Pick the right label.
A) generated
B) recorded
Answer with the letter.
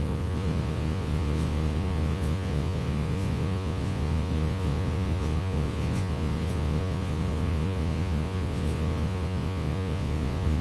A